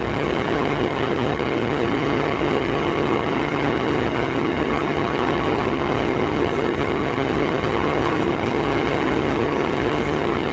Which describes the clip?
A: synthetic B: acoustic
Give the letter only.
A